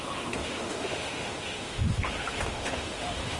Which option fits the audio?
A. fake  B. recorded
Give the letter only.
A